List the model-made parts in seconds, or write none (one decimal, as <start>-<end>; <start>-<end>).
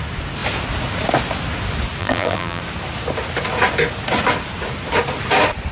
2.0-2.6